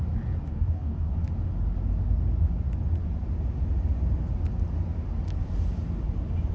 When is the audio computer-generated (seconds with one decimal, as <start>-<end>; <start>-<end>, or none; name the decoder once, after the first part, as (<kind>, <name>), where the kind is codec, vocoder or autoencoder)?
0.5-1.1 (codec, DAC)